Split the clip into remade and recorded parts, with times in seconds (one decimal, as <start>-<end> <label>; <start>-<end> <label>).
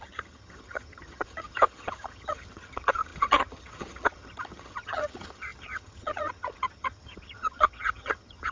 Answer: 0.0-8.5 remade